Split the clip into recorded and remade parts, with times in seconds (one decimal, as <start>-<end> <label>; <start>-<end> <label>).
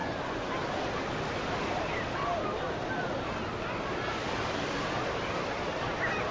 0.0-0.5 remade; 0.5-6.3 recorded